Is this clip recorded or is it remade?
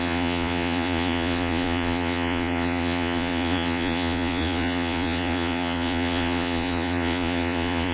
remade